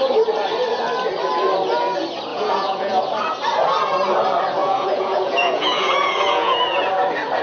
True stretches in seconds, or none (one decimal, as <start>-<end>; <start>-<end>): 0.0-2.3; 3.0-4.6; 6.9-7.4